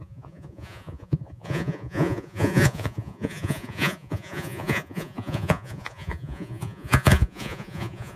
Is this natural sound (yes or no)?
no